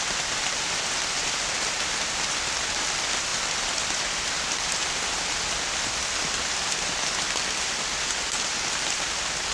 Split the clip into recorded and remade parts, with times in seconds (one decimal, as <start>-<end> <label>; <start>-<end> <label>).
0.0-9.5 recorded